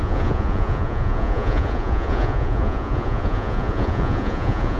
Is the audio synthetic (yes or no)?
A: yes